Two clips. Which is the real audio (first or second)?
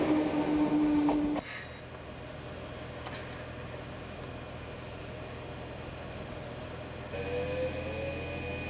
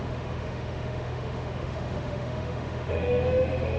first